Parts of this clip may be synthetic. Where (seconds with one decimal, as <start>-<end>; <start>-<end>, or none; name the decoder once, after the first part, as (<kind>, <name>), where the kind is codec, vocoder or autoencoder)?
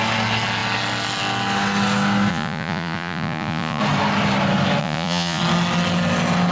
2.3-3.8 (vocoder, Vocos); 4.8-5.4